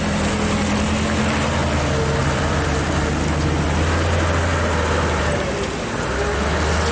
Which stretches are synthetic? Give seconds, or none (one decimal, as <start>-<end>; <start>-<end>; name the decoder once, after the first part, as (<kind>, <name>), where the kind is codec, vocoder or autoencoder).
2.2-2.9 (vocoder, BigVGAN v2)